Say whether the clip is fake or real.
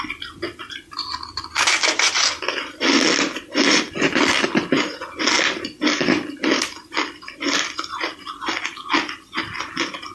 real